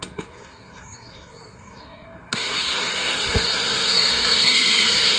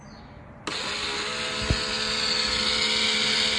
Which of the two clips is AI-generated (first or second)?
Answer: first